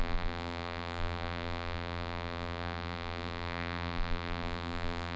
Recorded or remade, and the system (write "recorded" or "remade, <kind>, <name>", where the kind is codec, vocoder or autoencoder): remade, vocoder, BigVGAN v2